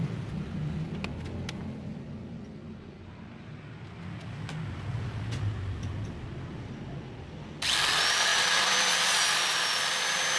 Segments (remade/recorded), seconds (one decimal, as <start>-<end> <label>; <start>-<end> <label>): 0.0-10.4 recorded